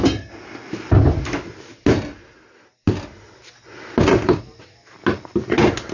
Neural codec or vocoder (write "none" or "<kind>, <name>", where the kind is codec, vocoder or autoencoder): none